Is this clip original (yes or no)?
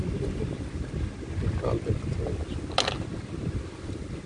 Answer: yes